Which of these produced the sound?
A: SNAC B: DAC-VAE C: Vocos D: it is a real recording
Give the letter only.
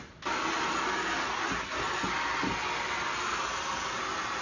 D